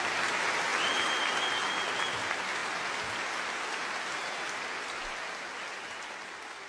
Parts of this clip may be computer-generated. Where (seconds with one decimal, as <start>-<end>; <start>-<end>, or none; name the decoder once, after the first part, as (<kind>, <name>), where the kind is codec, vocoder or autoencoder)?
none